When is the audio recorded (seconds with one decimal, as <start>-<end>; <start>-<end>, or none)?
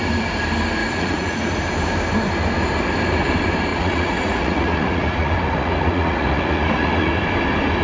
0.0-0.8; 1.6-3.7; 7.1-7.8